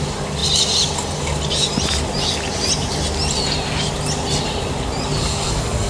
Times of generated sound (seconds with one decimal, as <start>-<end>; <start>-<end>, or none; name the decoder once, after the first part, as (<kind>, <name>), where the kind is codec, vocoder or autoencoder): 5.2-5.9 (codec, SNAC)